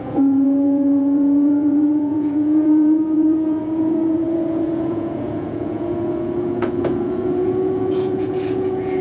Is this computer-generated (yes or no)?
yes